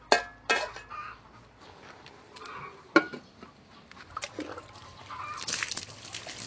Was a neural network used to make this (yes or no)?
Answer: no